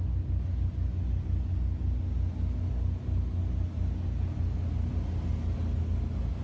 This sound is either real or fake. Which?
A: real